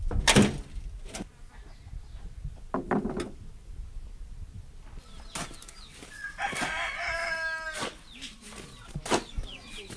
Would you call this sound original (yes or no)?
yes